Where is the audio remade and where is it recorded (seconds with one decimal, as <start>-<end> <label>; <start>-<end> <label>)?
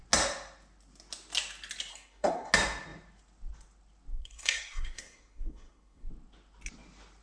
0.0-1.9 recorded; 1.9-2.5 remade; 2.5-4.1 recorded; 4.1-6.1 remade; 6.1-7.2 recorded